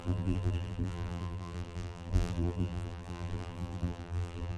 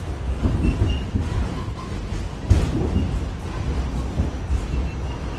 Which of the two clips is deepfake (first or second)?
first